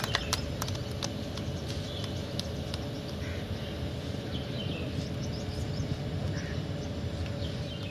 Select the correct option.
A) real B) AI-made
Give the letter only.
A